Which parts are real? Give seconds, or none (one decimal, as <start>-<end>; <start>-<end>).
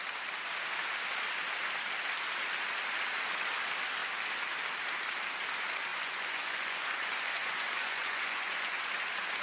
0.0-5.9; 8.9-9.4